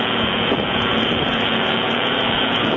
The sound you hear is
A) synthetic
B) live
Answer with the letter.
A